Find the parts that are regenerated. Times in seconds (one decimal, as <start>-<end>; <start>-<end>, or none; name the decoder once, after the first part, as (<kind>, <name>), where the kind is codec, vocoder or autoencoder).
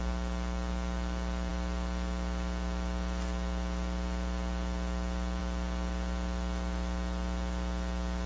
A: none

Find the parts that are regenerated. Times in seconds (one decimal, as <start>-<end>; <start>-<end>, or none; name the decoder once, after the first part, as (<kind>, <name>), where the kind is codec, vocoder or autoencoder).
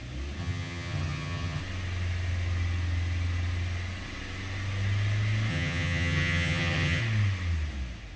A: 0.4-1.6 (vocoder, HiFi-GAN); 5.5-7.0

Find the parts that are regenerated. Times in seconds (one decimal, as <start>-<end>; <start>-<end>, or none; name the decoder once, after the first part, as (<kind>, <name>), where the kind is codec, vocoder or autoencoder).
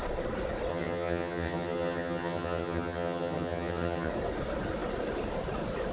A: 0.7-4.1 (vocoder, HiFi-GAN)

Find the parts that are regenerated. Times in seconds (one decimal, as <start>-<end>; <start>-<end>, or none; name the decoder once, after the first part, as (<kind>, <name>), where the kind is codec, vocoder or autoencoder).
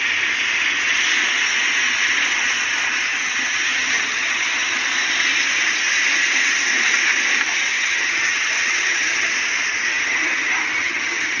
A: 3.1-4.8 (vocoder, HiFi-GAN); 7.7-9.3; 9.9-11.4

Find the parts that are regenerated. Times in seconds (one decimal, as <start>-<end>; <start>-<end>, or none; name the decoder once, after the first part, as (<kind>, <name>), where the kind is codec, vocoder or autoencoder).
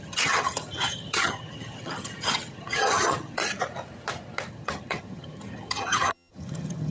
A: 0.0-3.4 (vocoder, HiFi-GAN); 4.5-6.9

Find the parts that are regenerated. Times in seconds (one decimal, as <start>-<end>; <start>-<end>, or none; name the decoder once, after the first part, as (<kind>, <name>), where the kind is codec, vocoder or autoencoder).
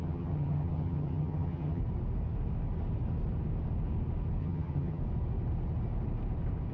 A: 0.0-1.8 (vocoder, HiFi-GAN); 4.4-5.0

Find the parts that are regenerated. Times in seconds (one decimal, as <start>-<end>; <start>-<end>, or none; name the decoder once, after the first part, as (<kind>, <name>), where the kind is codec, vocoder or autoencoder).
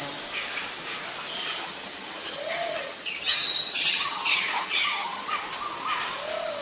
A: 1.4-5.4 (vocoder, HiFi-GAN)